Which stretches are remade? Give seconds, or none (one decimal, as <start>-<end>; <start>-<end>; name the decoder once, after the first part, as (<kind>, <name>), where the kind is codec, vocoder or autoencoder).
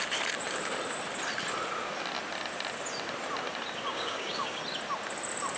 3.9-4.6 (codec, DAC)